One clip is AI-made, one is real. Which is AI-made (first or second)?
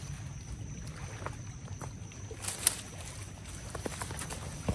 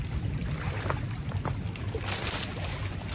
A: second